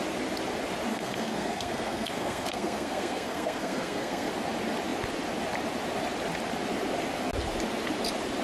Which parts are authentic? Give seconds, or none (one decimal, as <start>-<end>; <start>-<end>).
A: 0.0-0.9; 4.3-8.4